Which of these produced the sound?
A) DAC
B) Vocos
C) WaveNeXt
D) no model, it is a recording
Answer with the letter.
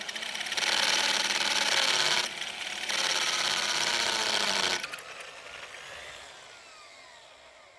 D